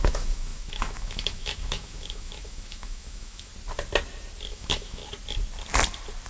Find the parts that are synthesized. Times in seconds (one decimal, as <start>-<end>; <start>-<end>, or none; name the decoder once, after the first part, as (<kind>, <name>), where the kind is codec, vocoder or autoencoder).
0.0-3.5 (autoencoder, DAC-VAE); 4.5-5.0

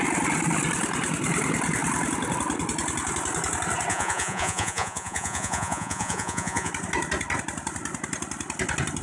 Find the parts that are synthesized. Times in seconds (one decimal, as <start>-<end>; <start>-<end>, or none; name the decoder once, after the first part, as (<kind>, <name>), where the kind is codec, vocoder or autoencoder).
3.9-6.7 (vocoder, Vocos)

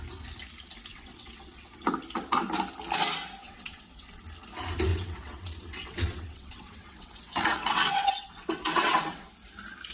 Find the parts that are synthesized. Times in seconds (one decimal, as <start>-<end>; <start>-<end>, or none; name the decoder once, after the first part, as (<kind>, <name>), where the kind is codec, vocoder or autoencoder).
0.9-1.7 (vocoder, WaveNeXt); 3.4-4.2; 4.9-9.3

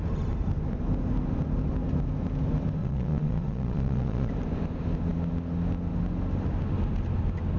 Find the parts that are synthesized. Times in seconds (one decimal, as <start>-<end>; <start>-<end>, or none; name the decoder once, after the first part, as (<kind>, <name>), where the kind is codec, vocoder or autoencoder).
2.8-4.3 (vocoder, Vocos)

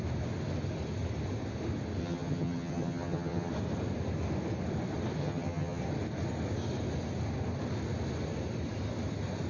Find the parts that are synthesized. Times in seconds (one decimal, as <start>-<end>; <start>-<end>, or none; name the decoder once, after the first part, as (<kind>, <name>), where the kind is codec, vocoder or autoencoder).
2.0-3.5 (vocoder, HiFi-GAN); 5.2-5.8

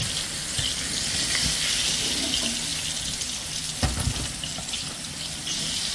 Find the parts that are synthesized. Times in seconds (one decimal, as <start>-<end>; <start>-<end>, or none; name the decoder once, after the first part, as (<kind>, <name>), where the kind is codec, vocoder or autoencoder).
none